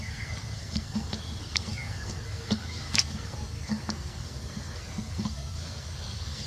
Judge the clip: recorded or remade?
remade